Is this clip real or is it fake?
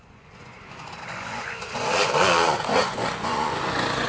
fake